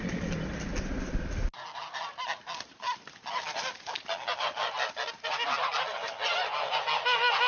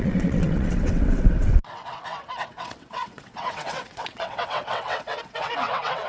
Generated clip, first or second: second